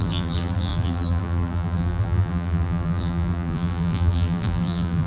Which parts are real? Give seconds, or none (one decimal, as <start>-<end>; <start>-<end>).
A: none